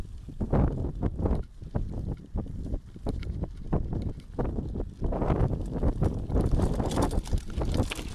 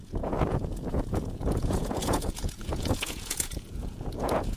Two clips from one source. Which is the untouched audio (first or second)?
first